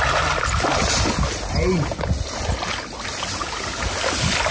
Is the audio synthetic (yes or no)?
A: no